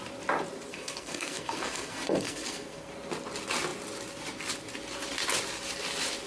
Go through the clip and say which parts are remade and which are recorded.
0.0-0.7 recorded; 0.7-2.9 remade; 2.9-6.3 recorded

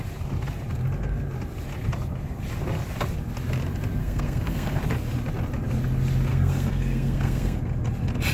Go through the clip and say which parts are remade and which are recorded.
0.0-4.0 recorded; 4.0-4.8 remade; 4.8-6.3 recorded; 6.3-7.6 remade; 7.6-8.3 recorded

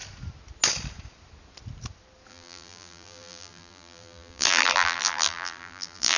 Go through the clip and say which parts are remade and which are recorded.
0.0-2.3 recorded; 2.3-6.2 remade

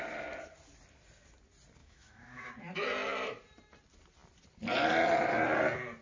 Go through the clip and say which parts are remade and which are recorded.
0.0-1.8 recorded; 1.8-2.5 remade; 2.5-6.0 recorded

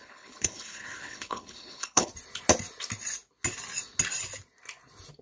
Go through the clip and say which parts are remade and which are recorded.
0.0-2.1 remade; 2.1-5.2 recorded

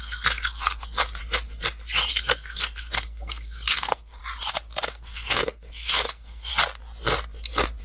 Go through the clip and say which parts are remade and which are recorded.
0.0-1.2 remade; 1.2-2.1 recorded; 2.1-4.2 remade; 4.2-4.8 recorded; 4.8-6.5 remade; 6.5-7.8 recorded

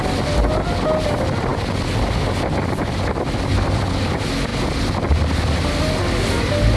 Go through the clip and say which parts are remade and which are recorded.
0.0-6.8 recorded

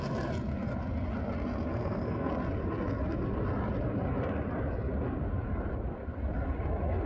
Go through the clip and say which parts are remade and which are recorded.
0.0-1.7 recorded; 1.7-2.3 remade; 2.3-7.1 recorded